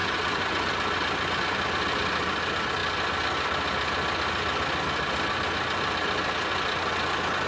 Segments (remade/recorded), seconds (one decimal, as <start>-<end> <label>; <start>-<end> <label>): 0.0-0.7 remade; 0.7-7.5 recorded